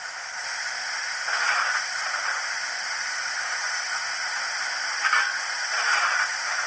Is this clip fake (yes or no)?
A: no